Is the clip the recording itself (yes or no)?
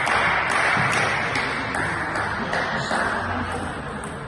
yes